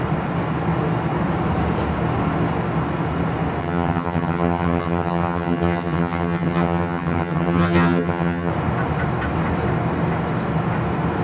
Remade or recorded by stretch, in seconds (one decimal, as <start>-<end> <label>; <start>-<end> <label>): 0.0-3.6 recorded; 3.6-8.5 remade; 8.5-11.2 recorded